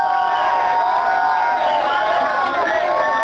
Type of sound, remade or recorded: recorded